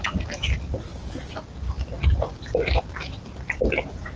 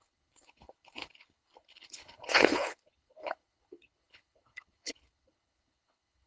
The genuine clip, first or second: first